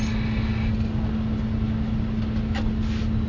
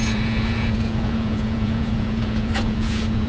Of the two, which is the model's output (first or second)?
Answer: second